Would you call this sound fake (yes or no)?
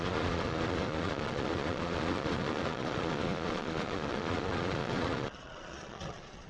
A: yes